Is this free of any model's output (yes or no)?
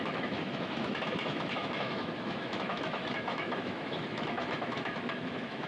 no